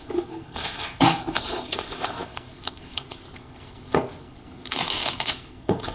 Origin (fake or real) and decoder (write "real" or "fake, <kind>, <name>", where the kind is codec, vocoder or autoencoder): fake, codec, SNAC